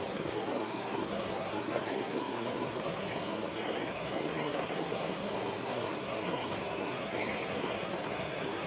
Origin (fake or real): fake